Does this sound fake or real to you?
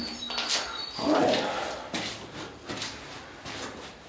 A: real